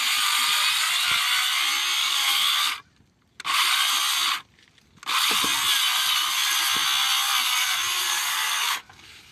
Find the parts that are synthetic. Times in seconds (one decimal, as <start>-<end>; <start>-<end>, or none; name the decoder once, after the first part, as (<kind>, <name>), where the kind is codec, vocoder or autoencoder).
2.0-2.7 (codec, DAC); 8.0-9.3

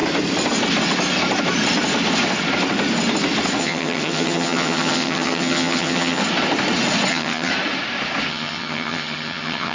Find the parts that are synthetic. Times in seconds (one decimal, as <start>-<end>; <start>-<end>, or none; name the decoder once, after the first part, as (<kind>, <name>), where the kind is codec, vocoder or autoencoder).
3.6-6.2 (vocoder, HiFi-GAN); 7.1-7.5; 8.3-9.7